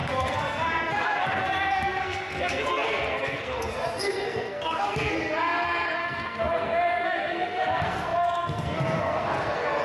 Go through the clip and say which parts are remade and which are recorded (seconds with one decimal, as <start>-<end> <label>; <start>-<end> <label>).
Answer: 0.0-9.8 remade